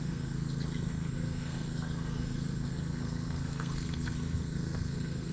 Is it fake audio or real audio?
fake